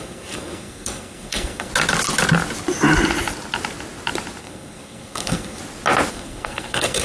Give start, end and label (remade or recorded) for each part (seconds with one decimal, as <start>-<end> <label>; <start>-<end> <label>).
0.0-1.7 remade; 1.7-4.4 recorded; 4.4-5.6 remade; 5.6-6.1 recorded; 6.1-7.0 remade